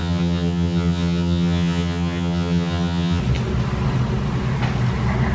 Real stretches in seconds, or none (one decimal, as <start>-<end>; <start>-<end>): 3.2-5.3